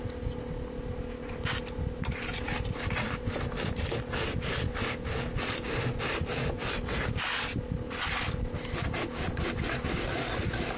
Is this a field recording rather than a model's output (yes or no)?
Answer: yes